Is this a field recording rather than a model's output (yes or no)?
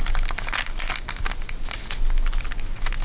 yes